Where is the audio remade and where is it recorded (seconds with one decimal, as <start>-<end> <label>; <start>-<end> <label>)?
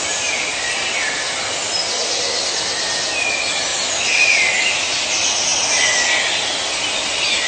0.0-7.5 recorded